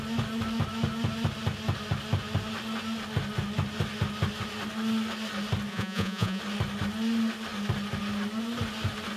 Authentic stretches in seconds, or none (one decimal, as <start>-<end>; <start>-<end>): 0.0-5.7; 6.4-9.2